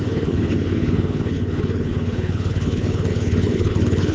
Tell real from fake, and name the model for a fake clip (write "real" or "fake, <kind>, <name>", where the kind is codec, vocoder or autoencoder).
fake, codec, HILCodec